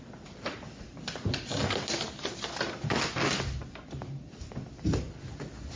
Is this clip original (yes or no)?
yes